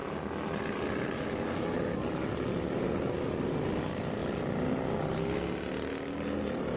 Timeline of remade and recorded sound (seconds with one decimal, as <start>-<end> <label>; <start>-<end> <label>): 0.0-6.8 recorded